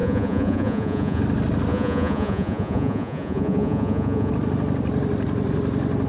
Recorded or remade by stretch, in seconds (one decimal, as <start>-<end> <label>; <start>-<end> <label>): 0.0-1.2 remade; 1.2-1.7 recorded; 1.7-4.3 remade; 4.3-6.1 recorded